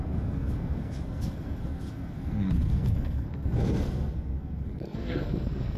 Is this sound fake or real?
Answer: fake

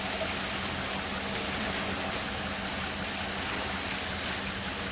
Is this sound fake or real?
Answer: real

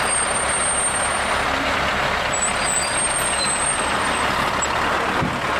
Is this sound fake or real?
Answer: real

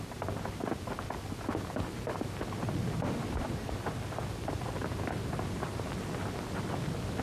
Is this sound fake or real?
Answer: real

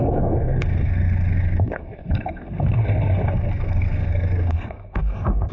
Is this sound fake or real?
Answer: fake